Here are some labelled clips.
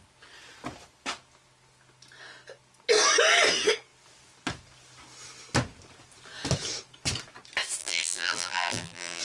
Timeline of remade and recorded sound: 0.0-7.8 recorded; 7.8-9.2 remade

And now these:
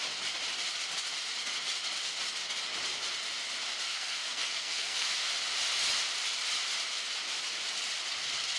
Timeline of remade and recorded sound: 0.0-3.9 recorded; 3.9-5.1 remade; 5.1-8.6 recorded